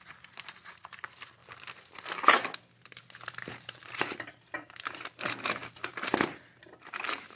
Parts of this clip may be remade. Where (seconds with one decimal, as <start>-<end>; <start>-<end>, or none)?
0.0-1.4; 3.4-5.6; 6.6-7.4